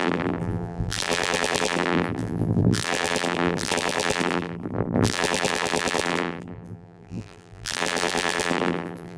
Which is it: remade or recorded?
remade